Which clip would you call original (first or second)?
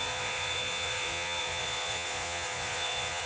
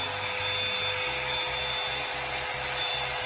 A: second